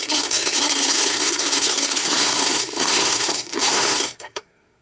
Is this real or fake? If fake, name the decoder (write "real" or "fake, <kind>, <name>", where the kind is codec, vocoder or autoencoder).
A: fake, codec, SNAC